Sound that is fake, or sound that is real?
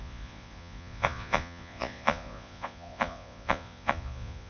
fake